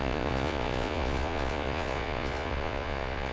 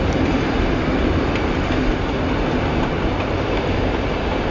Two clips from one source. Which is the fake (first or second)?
first